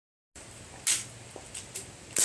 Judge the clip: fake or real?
real